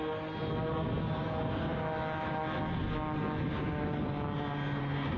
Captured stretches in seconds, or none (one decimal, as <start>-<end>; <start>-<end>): 0.0-5.2